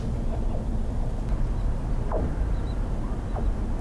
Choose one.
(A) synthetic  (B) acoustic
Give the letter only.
B